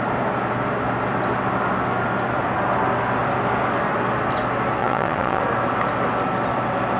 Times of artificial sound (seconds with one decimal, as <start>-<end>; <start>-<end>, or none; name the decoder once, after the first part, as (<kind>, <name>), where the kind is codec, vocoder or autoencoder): 4.8-5.4 (vocoder, WaveNeXt)